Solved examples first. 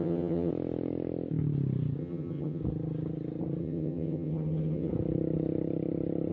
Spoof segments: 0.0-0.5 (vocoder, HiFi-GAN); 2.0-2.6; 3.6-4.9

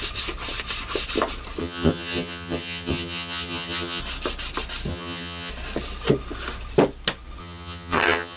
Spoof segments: 1.6-4.0 (vocoder, HiFi-GAN); 4.9-5.5; 7.4-8.4

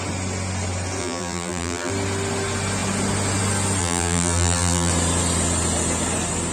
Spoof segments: 1.0-1.9 (vocoder, BigVGAN v2); 3.8-4.9